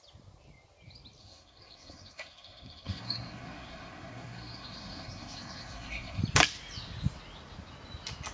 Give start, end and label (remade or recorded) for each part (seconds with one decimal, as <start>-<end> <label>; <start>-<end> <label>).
0.0-1.2 recorded; 1.2-6.2 remade; 6.2-8.3 recorded